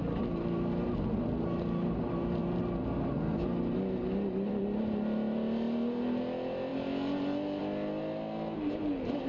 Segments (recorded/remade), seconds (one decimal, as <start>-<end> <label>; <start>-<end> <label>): 0.0-9.3 recorded